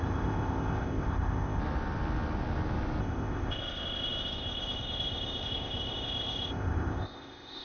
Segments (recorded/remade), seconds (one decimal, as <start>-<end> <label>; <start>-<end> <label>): 0.0-1.6 remade; 1.6-3.0 recorded; 3.0-7.6 remade

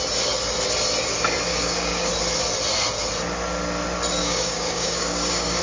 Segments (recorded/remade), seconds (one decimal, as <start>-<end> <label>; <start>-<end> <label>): 0.0-1.5 recorded; 1.5-2.1 remade; 2.1-4.2 recorded; 4.2-5.6 remade

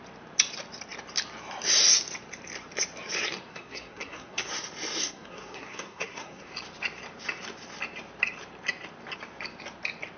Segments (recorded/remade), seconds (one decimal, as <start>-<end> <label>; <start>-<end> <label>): 0.0-3.5 recorded; 3.5-4.5 remade; 4.5-5.0 recorded; 5.0-6.5 remade; 6.5-10.2 recorded

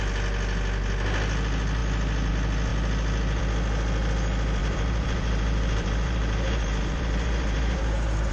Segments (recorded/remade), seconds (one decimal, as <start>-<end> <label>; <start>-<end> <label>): 0.0-4.6 recorded; 4.6-8.3 remade

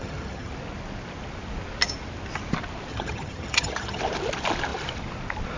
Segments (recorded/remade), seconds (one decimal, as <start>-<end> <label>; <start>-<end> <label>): 0.0-0.5 remade; 0.5-2.9 recorded; 2.9-4.0 remade; 4.0-5.6 recorded

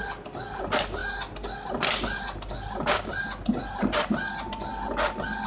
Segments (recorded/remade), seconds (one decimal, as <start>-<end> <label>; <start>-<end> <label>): 0.0-5.5 recorded

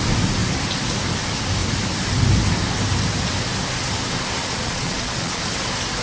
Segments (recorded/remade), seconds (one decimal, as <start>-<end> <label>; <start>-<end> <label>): 0.0-4.4 recorded; 4.4-5.4 remade; 5.4-6.0 recorded

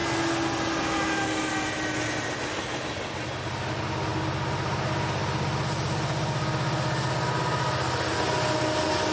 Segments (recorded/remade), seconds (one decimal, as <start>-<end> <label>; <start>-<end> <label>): 0.0-9.1 recorded